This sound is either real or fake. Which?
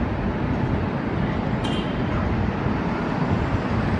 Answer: real